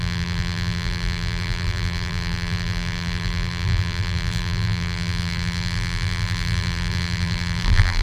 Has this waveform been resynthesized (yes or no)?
yes